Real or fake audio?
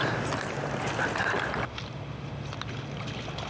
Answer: real